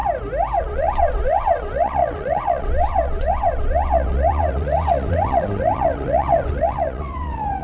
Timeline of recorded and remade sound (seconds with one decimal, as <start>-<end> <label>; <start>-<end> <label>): 0.0-0.6 recorded; 0.6-7.6 remade